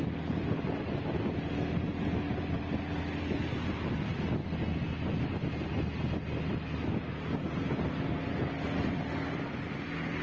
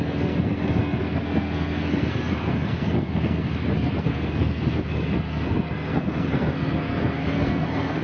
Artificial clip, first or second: second